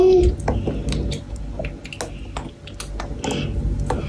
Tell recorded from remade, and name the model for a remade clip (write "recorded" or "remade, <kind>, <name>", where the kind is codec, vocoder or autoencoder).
recorded